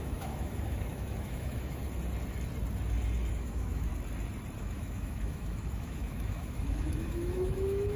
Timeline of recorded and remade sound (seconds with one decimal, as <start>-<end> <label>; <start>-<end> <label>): 0.0-1.8 remade; 1.8-3.3 recorded; 3.3-3.9 remade; 3.9-4.6 recorded; 4.6-8.0 remade